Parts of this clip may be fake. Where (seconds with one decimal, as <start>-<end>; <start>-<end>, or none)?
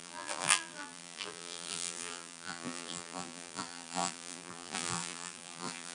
0.0-5.9